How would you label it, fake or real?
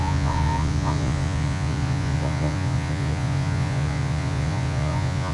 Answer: fake